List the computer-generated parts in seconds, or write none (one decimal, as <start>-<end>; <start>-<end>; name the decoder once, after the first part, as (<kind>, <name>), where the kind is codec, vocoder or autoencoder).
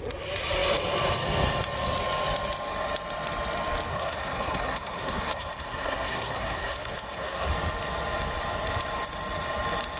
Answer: 3.9-7.5 (codec, SNAC)